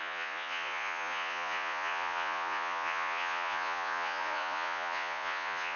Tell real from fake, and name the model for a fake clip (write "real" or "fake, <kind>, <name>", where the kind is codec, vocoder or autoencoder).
fake, vocoder, Vocos